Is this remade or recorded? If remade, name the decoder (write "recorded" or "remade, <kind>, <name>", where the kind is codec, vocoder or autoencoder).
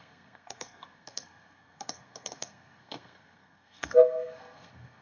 remade, codec, SNAC